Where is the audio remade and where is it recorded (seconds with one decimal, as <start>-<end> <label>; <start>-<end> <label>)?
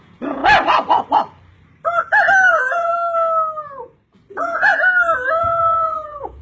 0.0-0.4 remade; 0.4-2.5 recorded; 2.5-2.9 remade; 2.9-4.3 recorded; 4.3-4.7 remade; 4.7-5.4 recorded; 5.4-6.4 remade